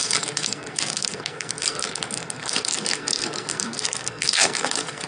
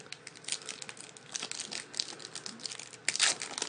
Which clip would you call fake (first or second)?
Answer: first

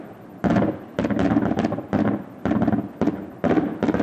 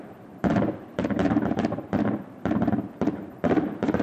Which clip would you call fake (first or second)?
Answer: second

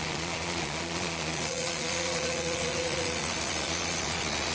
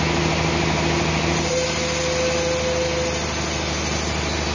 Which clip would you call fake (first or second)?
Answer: first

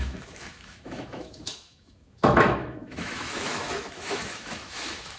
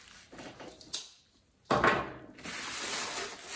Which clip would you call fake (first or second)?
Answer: first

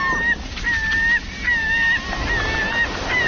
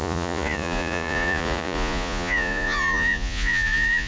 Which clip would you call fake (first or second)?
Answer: second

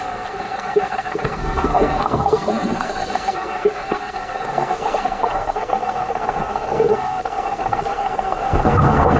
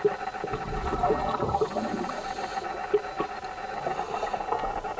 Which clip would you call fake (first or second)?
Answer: first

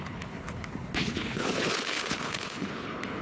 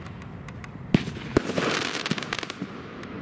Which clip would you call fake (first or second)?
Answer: first